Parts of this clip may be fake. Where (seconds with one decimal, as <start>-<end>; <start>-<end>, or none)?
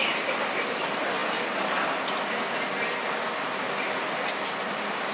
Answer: 0.0-1.2; 4.3-5.1